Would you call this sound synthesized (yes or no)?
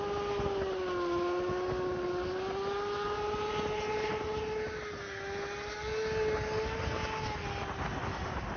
no